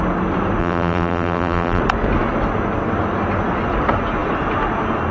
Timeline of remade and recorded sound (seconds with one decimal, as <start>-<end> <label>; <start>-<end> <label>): 0.0-0.6 recorded; 0.6-1.8 remade; 1.8-5.1 recorded